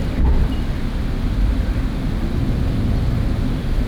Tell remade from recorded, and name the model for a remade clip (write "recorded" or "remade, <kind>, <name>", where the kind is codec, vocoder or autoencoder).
recorded